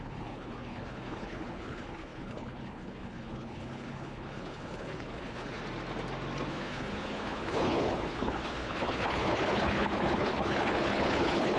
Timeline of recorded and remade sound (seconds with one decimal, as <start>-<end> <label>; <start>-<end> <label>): 0.0-5.6 remade; 5.6-6.5 recorded; 6.5-11.6 remade